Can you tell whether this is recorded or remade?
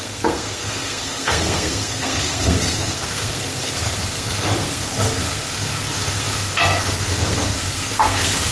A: remade